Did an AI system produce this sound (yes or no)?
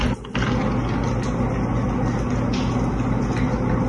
no